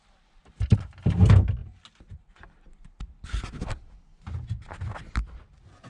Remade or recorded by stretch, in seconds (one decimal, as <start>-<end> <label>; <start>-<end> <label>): 0.0-5.9 recorded